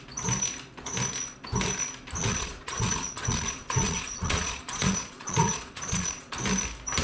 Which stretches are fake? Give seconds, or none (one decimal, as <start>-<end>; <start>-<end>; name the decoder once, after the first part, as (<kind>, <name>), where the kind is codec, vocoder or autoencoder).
2.2-6.3 (vocoder, Vocos)